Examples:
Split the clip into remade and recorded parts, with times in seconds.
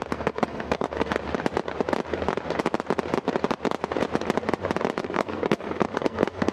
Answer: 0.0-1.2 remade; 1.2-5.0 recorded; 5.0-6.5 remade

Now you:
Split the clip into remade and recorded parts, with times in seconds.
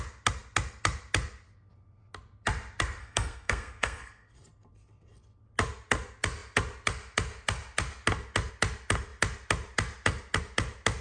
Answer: 0.0-3.0 recorded; 3.0-4.3 remade; 4.3-11.0 recorded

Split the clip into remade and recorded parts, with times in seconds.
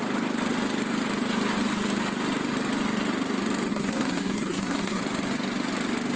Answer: 0.0-3.7 recorded; 3.7-5.0 remade; 5.0-6.2 recorded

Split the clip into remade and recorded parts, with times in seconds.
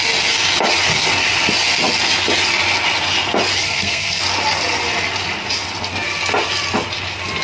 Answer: 0.0-3.6 recorded; 3.6-4.2 remade; 4.2-7.4 recorded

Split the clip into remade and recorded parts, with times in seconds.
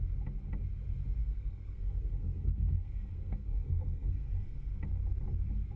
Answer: 0.0-1.2 recorded; 1.2-4.7 remade; 4.7-5.8 recorded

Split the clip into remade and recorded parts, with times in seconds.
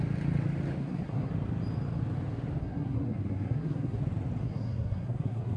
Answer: 0.0-0.8 recorded; 0.8-1.3 remade; 1.3-2.6 recorded; 2.6-4.0 remade; 4.0-4.4 recorded; 4.4-5.6 remade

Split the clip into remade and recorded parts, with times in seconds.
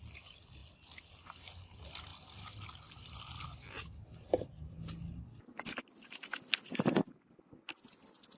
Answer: 0.0-8.4 recorded